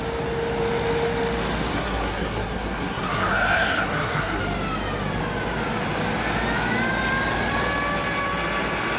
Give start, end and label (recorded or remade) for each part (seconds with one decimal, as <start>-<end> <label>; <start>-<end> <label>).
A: 0.0-1.7 recorded; 1.7-4.4 remade; 4.4-9.0 recorded